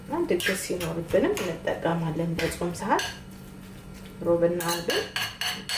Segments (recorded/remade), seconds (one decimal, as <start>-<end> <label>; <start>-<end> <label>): 0.0-1.9 recorded; 1.9-2.8 remade; 2.8-5.8 recorded